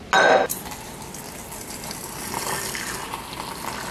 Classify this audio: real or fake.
real